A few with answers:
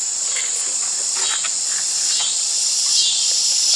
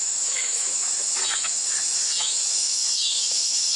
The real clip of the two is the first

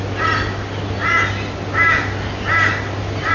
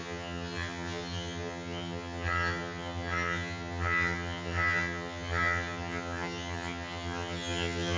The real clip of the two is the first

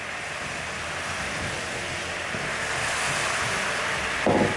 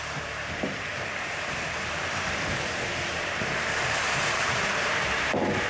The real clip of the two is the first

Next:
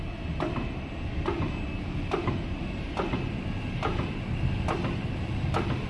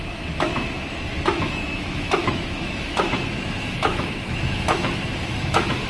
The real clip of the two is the first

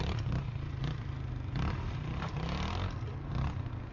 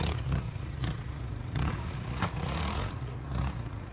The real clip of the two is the first